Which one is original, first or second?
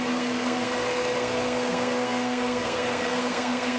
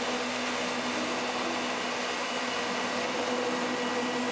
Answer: second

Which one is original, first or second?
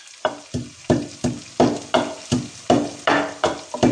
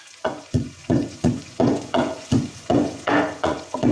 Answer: first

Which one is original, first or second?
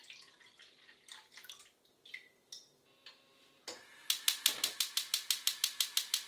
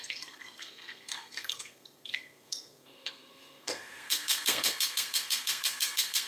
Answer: first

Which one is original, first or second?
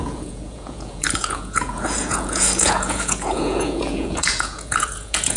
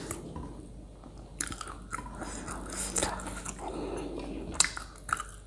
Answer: second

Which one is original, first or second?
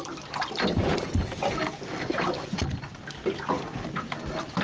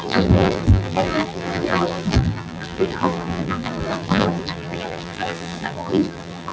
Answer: first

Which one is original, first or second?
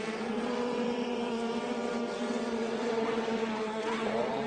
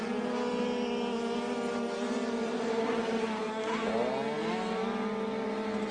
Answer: second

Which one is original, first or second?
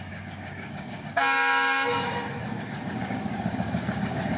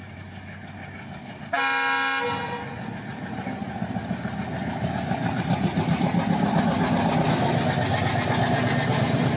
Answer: second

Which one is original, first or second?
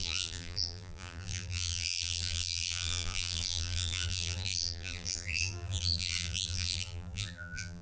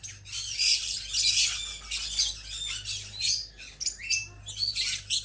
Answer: second